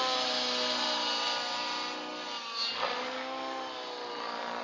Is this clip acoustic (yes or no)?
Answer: yes